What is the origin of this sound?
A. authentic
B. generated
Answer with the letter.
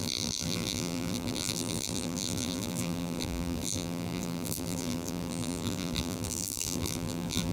B